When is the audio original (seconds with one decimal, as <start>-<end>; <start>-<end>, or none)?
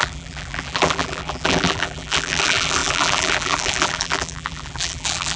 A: none